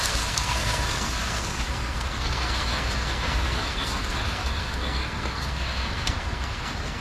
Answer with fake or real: fake